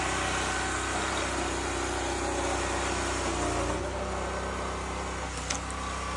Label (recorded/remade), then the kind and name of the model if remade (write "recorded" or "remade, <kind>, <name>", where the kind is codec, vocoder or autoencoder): recorded